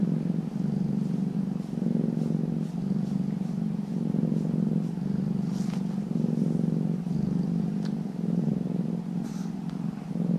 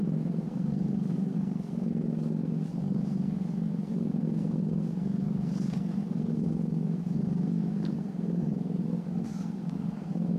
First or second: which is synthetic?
second